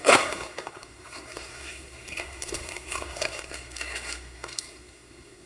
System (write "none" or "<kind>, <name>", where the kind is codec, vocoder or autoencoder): codec, SNAC